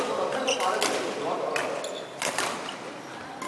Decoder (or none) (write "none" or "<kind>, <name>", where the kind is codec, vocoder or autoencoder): none